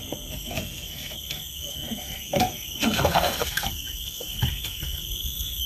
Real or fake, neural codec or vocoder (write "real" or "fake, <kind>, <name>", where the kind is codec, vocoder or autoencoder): fake, codec, SNAC